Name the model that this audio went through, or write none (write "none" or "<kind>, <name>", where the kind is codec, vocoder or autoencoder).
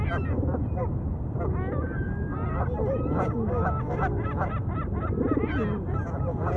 none